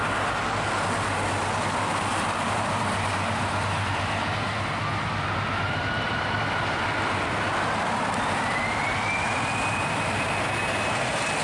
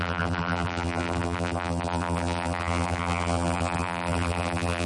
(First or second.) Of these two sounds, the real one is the first